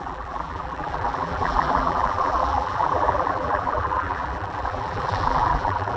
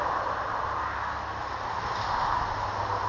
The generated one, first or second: first